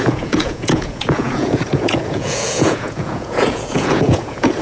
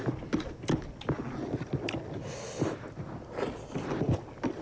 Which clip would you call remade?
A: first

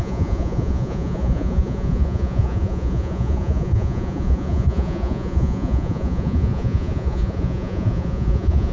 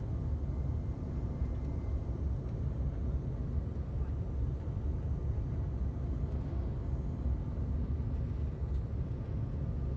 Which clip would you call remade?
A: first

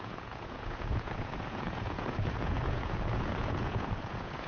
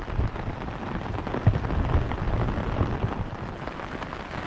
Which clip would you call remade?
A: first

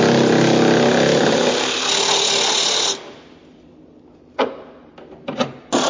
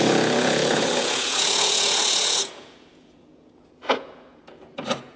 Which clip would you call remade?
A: second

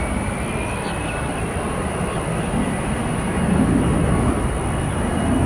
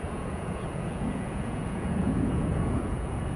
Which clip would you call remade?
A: second